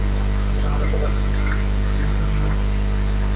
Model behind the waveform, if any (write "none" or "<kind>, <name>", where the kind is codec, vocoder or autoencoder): none